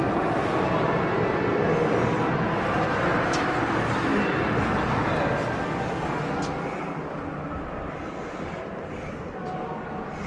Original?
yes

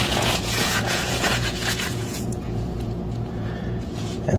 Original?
no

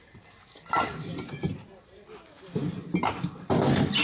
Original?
yes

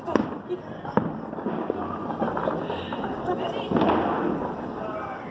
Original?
yes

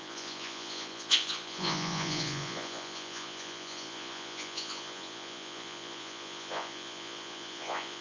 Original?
no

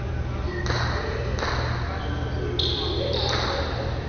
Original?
yes